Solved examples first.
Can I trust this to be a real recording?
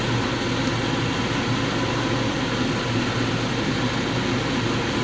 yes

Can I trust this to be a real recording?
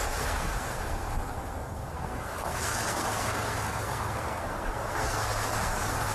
no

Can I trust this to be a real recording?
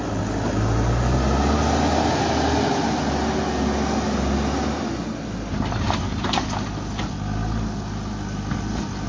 yes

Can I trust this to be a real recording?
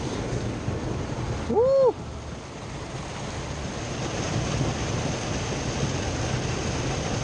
yes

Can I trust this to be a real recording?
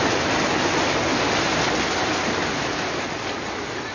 yes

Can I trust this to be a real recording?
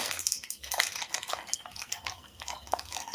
no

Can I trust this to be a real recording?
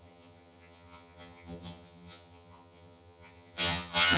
no